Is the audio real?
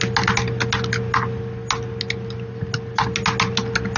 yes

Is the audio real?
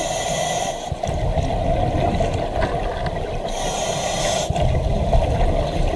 yes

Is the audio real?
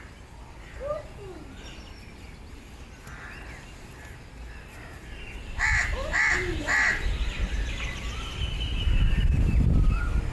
yes